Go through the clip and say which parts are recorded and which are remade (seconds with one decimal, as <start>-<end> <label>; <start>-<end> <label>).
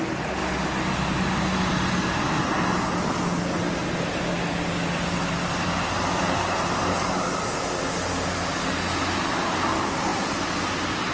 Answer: 0.0-3.8 recorded; 3.8-4.3 remade; 4.3-11.1 recorded